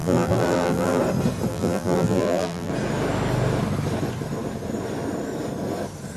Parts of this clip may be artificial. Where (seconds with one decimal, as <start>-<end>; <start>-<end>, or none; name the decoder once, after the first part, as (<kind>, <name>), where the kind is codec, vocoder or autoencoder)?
0.0-1.0 (vocoder, BigVGAN v2); 1.5-2.7